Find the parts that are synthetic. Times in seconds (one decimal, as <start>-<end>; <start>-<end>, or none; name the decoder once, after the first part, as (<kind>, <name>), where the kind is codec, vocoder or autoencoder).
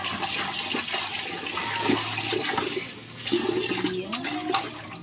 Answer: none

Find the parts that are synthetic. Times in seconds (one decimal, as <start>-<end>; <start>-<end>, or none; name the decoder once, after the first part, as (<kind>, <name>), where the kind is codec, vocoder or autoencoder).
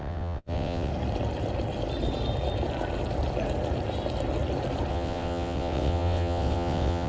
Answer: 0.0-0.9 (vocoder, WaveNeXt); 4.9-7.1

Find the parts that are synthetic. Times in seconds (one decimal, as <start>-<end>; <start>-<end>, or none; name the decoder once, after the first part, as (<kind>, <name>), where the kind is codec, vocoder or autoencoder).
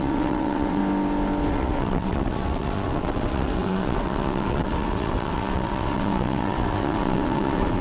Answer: 0.0-0.8 (vocoder, WaveNeXt); 1.5-7.8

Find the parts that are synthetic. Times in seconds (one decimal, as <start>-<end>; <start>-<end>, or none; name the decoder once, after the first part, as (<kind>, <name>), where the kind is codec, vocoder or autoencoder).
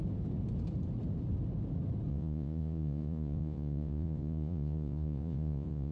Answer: 2.1-5.9 (vocoder, Vocos)